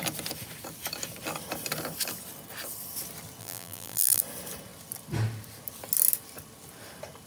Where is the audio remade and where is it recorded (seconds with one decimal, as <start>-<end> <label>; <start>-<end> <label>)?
0.0-3.4 recorded; 3.4-4.2 remade; 4.2-7.3 recorded